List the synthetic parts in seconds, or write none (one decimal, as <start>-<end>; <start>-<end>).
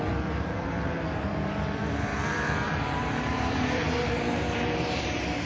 0.0-5.5